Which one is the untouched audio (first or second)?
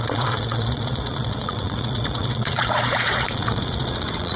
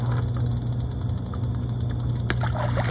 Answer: second